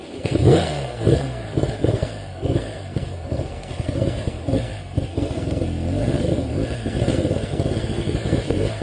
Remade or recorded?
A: remade